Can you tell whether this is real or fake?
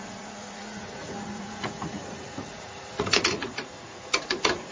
fake